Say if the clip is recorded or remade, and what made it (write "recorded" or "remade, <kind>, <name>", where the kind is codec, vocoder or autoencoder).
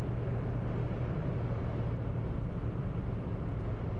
recorded